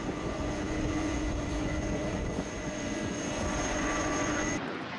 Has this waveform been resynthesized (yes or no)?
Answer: yes